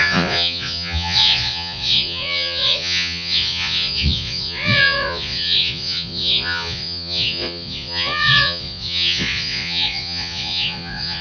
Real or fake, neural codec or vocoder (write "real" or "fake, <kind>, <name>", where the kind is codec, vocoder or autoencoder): fake, vocoder, Vocos